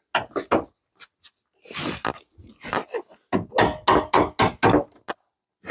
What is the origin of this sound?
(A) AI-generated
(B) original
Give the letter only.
B